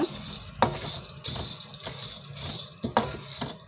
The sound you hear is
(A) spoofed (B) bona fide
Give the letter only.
B